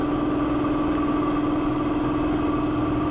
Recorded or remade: recorded